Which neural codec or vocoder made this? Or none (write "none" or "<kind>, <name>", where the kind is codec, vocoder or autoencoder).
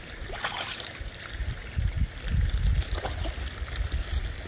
none